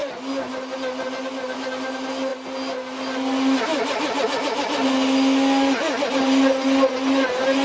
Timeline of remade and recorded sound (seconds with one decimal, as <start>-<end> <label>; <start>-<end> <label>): 0.0-7.6 recorded